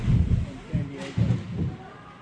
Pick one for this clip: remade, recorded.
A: recorded